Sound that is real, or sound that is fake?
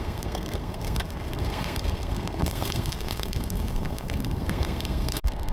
fake